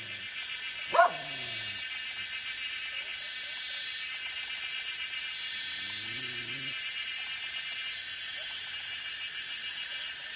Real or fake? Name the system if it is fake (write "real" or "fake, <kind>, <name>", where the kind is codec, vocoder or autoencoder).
real